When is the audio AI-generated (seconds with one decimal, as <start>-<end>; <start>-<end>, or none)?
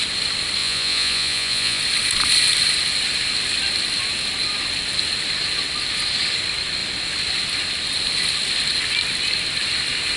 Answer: 0.6-1.8